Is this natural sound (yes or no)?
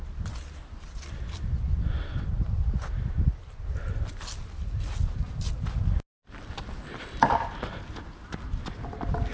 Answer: yes